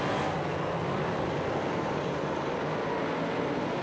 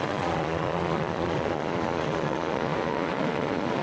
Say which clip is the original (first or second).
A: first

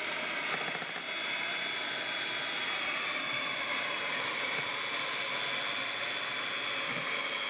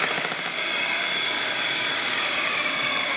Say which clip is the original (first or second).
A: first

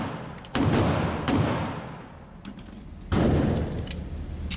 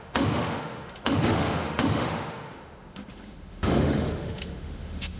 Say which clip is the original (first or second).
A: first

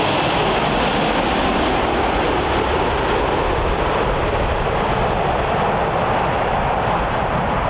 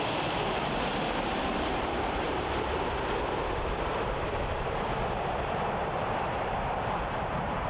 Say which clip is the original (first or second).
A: first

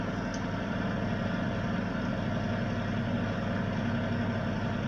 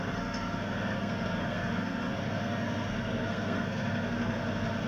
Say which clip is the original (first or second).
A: first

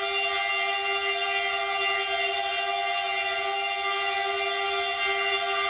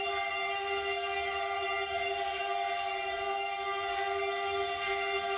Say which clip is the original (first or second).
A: first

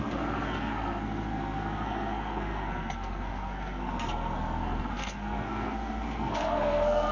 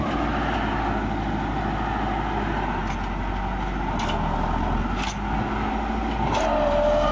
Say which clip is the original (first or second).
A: second